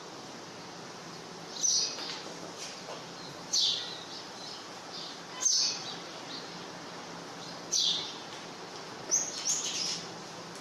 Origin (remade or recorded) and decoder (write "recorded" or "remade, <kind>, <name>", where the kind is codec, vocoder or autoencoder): recorded